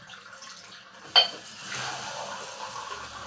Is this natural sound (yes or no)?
yes